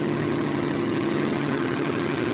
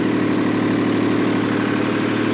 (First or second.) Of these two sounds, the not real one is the first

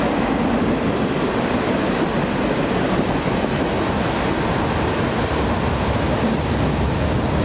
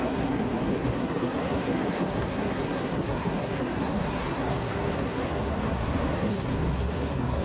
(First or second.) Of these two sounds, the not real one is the second